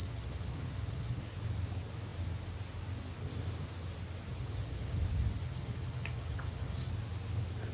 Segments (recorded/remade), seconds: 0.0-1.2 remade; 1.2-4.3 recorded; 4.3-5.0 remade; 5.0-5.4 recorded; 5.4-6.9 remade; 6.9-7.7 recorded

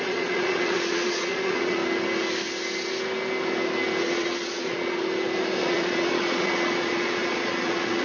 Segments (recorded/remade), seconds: 0.0-1.8 remade; 1.8-4.0 recorded; 4.0-5.0 remade; 5.0-5.6 recorded; 5.6-8.0 remade

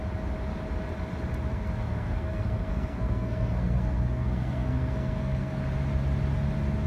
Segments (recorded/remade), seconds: 0.0-1.5 recorded; 1.5-5.6 remade; 5.6-6.9 recorded

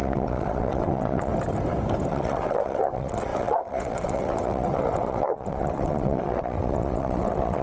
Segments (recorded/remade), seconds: 0.0-1.3 remade; 1.3-2.1 recorded; 2.1-7.6 remade

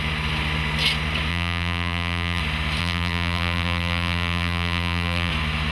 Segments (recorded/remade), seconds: 0.0-1.3 recorded; 1.3-2.4 remade; 2.4-2.8 recorded; 2.8-5.3 remade; 5.3-5.7 recorded

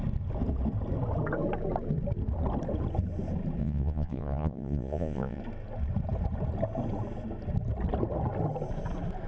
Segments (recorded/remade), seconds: 0.0-3.6 recorded; 3.6-5.4 remade; 5.4-9.3 recorded

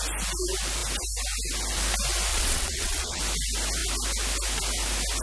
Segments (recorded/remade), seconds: 0.0-2.3 recorded; 2.3-3.2 remade; 3.2-5.2 recorded